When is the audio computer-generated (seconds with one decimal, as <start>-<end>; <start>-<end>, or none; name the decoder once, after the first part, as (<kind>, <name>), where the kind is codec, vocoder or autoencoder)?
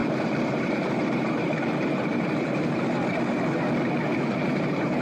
0.0-2.8 (vocoder, BigVGAN v2); 4.1-5.0